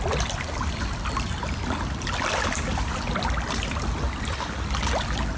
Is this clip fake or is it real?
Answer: real